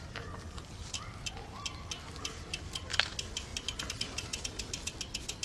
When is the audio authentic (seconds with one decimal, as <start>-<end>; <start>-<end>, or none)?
0.0-0.8; 1.3-3.5; 4.4-5.4